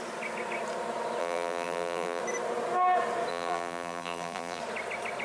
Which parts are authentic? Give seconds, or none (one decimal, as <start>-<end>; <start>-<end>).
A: 0.0-1.2; 2.2-3.3; 4.6-5.2